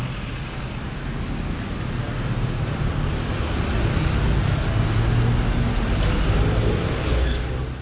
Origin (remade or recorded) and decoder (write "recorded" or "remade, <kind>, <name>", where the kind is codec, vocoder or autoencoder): recorded